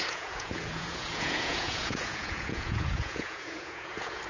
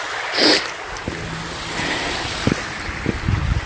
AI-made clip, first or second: first